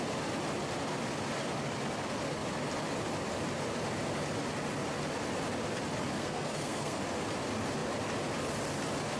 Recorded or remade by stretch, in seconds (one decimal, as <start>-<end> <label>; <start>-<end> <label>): 0.0-6.2 recorded; 6.2-7.0 remade; 7.0-9.2 recorded